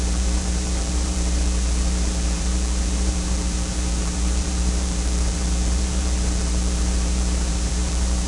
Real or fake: fake